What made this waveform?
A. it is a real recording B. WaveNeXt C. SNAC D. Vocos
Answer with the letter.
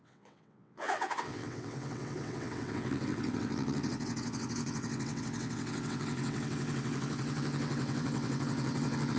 B